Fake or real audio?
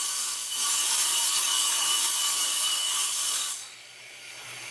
fake